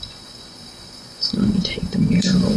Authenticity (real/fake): fake